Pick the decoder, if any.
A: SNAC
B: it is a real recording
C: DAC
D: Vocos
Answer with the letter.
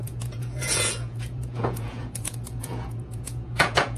D